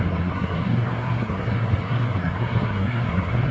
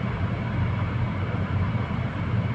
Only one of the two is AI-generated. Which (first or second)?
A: first